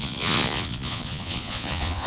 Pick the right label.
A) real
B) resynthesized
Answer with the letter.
B